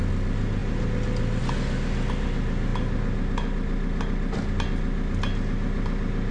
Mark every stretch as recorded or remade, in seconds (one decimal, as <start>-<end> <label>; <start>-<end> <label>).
0.0-6.3 recorded